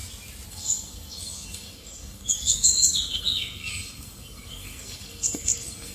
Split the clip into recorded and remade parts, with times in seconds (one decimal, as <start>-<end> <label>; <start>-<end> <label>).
0.0-0.5 recorded; 0.5-5.9 remade